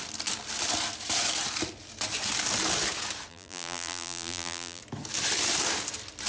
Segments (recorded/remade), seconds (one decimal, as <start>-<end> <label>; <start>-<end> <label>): 0.0-3.3 recorded; 3.3-4.8 remade; 4.8-6.3 recorded